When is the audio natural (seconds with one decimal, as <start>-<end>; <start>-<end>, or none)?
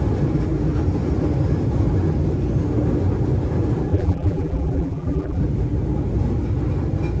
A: 0.0-3.9; 5.4-7.2